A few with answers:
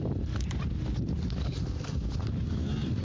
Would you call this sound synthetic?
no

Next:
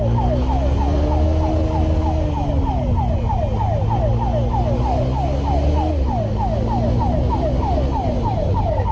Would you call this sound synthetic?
no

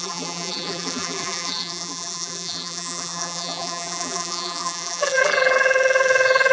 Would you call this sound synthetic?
yes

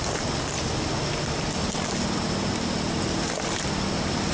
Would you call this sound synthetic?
no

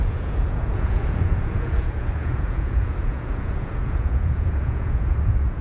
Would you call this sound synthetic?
yes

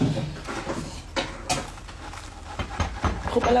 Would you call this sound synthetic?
no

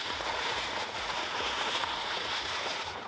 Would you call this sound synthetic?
yes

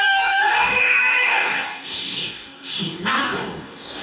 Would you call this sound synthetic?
yes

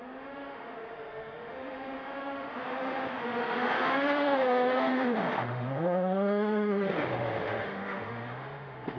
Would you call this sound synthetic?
yes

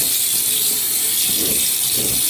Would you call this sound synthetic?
no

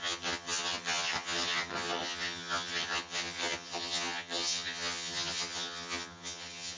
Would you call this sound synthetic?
yes